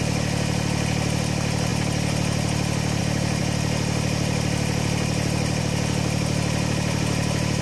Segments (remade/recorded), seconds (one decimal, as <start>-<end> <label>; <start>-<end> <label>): 0.0-7.6 recorded